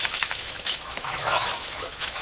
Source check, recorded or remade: remade